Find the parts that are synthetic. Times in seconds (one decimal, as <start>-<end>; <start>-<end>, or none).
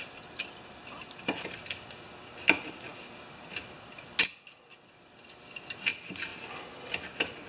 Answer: none